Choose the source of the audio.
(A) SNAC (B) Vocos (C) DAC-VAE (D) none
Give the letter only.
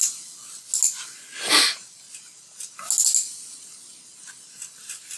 D